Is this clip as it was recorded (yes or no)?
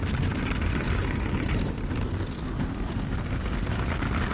yes